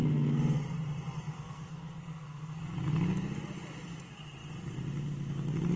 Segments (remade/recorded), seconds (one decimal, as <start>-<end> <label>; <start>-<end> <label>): 0.0-0.6 remade; 0.6-1.3 recorded; 1.3-2.6 remade; 2.6-5.8 recorded